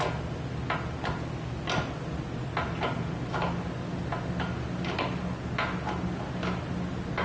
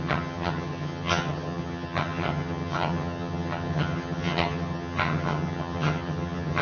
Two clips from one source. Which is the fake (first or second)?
second